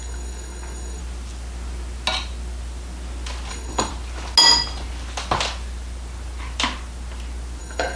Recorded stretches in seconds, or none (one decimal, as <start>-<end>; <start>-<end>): 1.0-3.5; 3.9-7.6